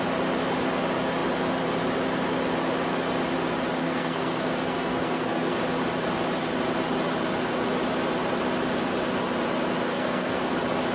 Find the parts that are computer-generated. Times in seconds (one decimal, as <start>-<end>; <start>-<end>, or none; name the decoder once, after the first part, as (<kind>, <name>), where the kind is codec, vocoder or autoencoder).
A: 3.8-5.6 (codec, SNAC); 9.9-10.4